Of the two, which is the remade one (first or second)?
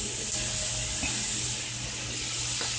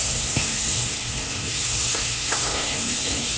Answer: second